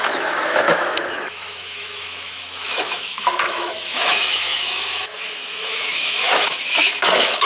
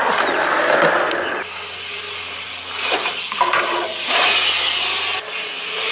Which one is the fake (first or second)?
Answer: first